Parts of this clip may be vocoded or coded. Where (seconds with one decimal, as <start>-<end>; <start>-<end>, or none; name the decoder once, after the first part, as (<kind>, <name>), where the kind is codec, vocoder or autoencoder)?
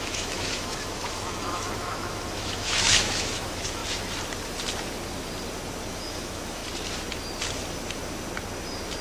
0.0-3.8 (autoencoder, DAC-VAE); 5.9-6.6